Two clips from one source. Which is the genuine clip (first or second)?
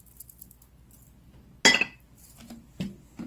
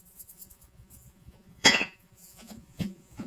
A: first